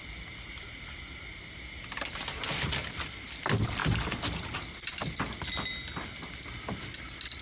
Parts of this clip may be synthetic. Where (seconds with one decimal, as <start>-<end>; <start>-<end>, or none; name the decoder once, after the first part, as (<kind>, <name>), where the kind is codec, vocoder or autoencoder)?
none